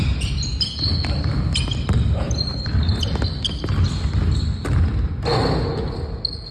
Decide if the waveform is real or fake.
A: real